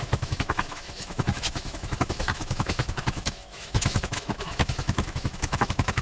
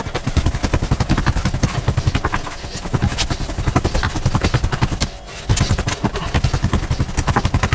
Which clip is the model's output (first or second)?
first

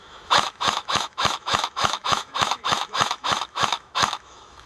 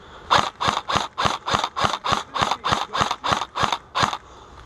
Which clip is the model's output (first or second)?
first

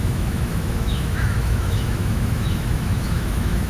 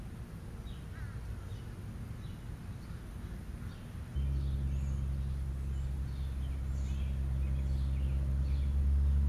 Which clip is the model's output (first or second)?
first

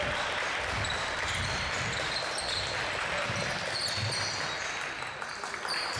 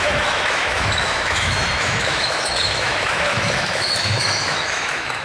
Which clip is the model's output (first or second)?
second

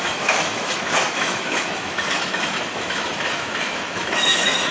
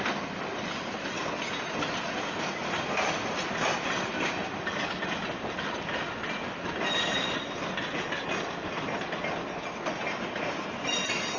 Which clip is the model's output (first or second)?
first